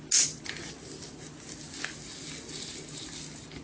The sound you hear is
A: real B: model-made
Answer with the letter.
A